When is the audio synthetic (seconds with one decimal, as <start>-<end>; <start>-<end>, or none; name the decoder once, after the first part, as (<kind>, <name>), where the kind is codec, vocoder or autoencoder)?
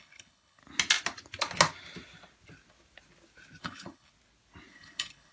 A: 0.0-0.6 (codec, HILCodec); 3.6-4.1; 4.7-5.3